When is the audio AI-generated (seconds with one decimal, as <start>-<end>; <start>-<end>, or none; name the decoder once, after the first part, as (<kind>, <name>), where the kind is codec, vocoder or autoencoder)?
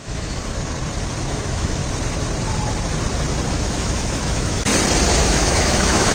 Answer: 0.0-0.4 (autoencoder, DAC-VAE); 1.3-1.8; 3.5-4.7; 5.2-6.1